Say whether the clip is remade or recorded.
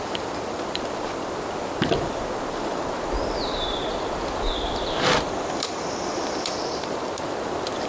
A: remade